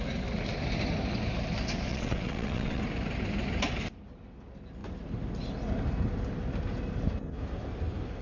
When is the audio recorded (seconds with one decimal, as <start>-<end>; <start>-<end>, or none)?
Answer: 0.0-1.9; 2.8-8.2